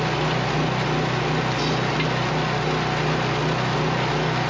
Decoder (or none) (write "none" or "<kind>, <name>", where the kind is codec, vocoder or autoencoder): none